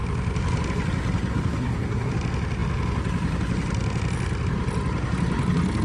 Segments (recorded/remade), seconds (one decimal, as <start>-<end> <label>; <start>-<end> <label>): 0.0-1.3 recorded; 1.3-2.1 remade; 2.1-5.8 recorded